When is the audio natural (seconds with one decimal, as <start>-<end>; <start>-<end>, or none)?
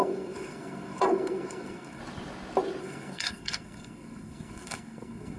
2.0-2.8